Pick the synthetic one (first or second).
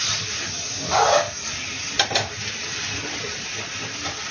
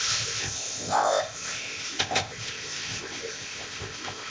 second